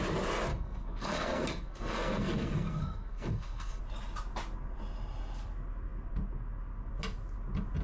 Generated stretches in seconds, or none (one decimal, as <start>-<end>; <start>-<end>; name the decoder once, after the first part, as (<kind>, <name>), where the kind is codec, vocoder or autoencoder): 0.5-3.8 (codec, SNAC)